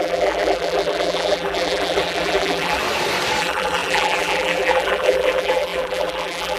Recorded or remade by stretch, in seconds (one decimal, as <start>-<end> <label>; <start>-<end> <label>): 0.0-2.8 remade; 2.8-3.4 recorded; 3.4-6.6 remade